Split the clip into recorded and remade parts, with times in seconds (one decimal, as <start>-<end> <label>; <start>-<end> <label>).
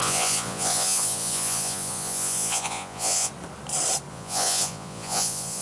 0.0-3.3 remade; 3.3-4.1 recorded; 4.1-5.6 remade